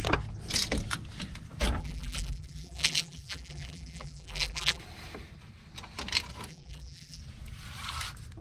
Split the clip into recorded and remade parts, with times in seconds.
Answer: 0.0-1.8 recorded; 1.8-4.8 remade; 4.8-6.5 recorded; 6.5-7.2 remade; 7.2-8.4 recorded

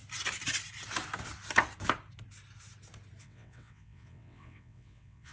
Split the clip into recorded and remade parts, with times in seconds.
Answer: 0.0-3.2 recorded; 3.2-5.3 remade

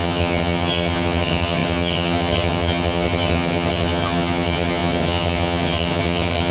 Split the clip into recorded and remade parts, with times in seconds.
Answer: 0.0-6.5 remade

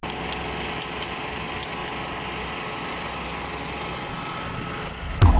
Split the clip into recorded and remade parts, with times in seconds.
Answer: 0.0-5.4 recorded

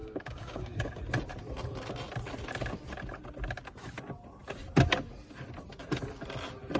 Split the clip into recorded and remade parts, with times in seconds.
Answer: 0.0-1.0 remade; 1.0-6.8 recorded

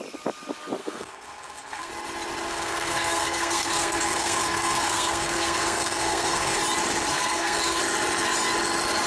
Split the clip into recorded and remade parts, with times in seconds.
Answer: 0.0-0.8 recorded; 0.8-1.9 remade; 1.9-2.5 recorded; 2.5-6.6 remade; 6.6-7.1 recorded; 7.1-7.8 remade; 7.8-9.1 recorded

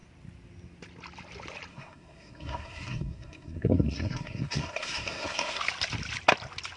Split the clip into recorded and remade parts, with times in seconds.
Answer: 0.0-1.7 recorded; 1.7-5.6 remade; 5.6-6.8 recorded

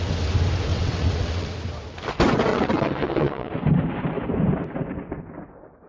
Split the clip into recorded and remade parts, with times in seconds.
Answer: 0.0-0.7 recorded; 0.7-1.5 remade; 1.5-2.5 recorded; 2.5-3.5 remade; 3.5-5.9 recorded